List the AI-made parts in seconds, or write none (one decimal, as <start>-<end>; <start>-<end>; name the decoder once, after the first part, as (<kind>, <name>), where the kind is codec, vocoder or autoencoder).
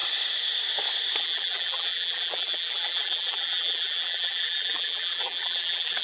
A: 1.2-6.0 (vocoder, BigVGAN v2)